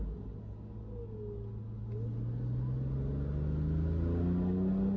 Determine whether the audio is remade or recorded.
recorded